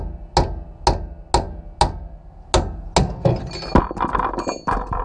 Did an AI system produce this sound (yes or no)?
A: no